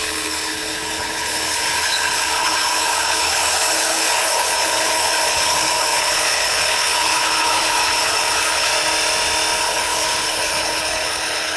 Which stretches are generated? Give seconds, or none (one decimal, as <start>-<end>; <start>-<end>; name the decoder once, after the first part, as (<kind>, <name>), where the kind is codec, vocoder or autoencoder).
0.0-8.7 (codec, HILCodec); 9.6-11.6